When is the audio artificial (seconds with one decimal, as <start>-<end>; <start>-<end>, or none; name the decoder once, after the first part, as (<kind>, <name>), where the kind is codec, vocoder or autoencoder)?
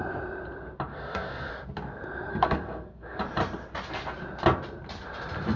0.9-1.5 (codec, SNAC); 2.3-3.2